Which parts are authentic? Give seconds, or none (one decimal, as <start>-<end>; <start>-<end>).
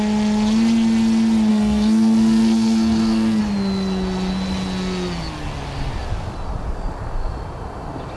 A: 0.0-1.5; 3.4-8.2